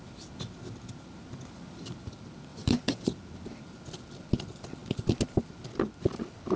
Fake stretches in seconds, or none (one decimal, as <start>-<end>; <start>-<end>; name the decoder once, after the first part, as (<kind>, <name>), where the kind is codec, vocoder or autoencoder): 2.5-3.1 (vocoder, Vocos)